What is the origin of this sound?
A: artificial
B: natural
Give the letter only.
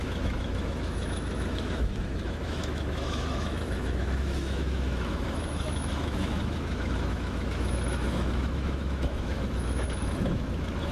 A